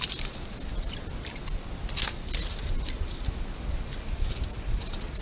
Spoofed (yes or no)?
no